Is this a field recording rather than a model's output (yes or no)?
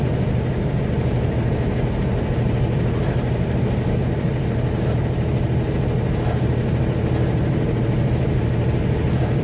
yes